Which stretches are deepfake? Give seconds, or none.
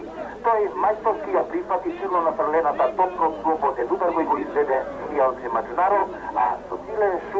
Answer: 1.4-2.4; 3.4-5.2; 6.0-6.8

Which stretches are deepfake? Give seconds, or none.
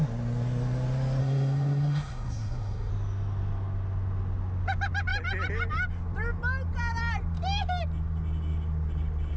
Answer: 1.2-2.9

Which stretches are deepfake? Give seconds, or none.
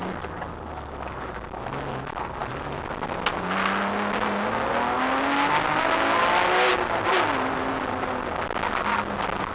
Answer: none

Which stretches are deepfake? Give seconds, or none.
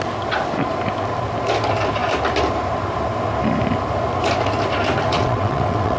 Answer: 5.1-6.0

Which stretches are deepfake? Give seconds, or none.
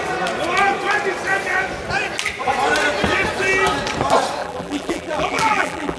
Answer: 4.4-6.0